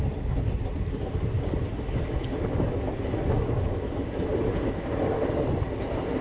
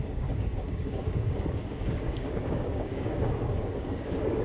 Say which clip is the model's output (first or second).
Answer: second